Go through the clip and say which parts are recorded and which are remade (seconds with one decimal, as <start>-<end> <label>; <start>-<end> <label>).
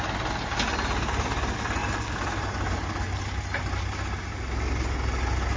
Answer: 0.0-5.6 recorded